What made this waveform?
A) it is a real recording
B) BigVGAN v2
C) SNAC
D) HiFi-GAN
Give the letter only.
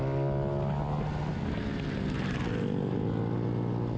A